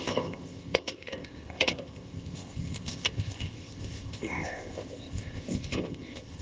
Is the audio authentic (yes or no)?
no